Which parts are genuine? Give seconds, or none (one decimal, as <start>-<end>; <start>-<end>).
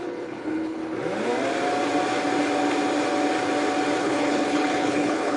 0.8-4.0